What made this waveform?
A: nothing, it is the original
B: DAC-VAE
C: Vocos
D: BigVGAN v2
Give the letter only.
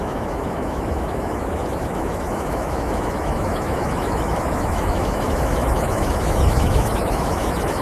B